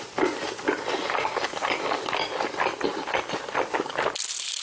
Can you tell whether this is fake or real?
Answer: real